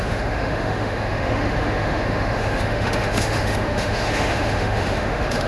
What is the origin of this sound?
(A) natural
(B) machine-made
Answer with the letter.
B